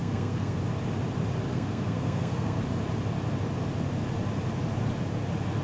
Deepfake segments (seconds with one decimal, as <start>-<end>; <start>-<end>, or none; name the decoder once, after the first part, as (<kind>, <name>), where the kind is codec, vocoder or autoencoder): 0.0-0.6 (codec, SNAC); 1.5-2.6